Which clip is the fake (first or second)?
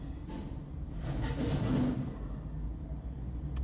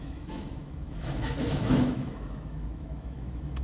second